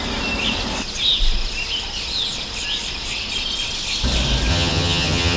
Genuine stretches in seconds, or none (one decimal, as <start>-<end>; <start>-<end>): 0.0-4.5